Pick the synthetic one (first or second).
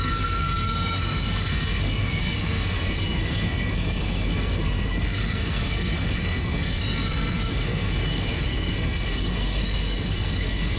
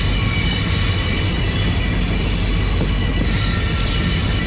first